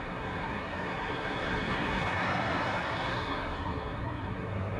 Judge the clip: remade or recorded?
remade